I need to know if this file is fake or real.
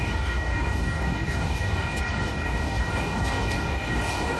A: fake